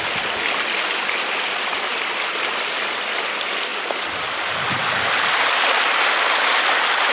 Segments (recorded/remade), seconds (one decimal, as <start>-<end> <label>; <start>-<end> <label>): 0.0-7.1 recorded